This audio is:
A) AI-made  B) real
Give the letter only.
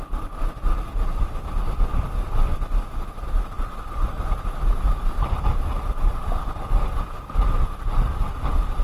B